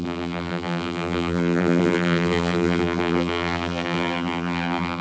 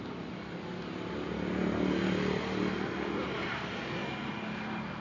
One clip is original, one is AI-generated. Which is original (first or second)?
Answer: second